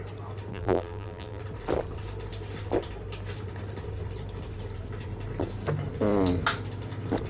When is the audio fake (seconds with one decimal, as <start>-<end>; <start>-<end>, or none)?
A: 0.5-1.4